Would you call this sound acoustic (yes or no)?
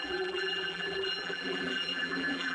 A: no